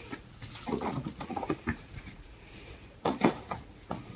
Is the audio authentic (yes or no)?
no